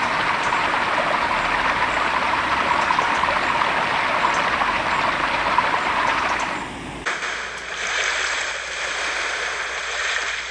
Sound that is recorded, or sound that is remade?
recorded